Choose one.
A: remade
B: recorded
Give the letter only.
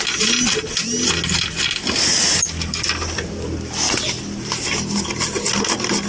B